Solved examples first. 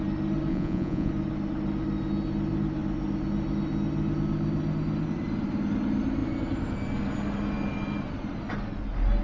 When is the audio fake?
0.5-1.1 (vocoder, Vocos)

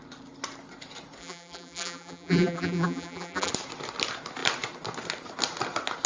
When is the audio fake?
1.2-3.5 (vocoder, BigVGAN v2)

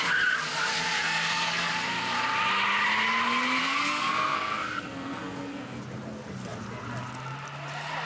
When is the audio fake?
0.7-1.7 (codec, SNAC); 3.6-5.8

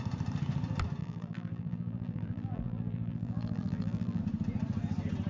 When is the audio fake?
1.0-4.2 (vocoder, BigVGAN v2)